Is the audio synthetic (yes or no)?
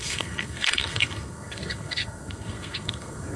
yes